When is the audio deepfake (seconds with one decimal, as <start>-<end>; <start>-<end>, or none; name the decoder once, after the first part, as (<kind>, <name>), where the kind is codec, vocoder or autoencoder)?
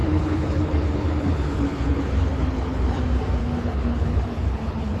0.0-3.0 (codec, HILCodec); 3.4-5.0